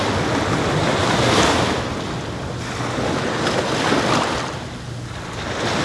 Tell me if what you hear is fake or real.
real